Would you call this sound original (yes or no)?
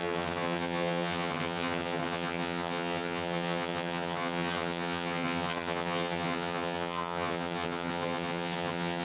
no